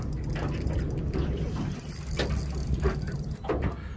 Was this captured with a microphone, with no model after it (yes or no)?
yes